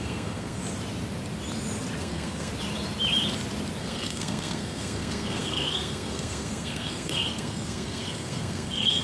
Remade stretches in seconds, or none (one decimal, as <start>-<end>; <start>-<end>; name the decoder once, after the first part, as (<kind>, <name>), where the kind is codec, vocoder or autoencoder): 0.0-0.6 (codec, SNAC); 2.0-2.5; 3.8-9.0

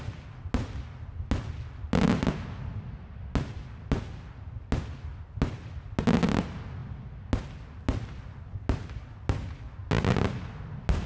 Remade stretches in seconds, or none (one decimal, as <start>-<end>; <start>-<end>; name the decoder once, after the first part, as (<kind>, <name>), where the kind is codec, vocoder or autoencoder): none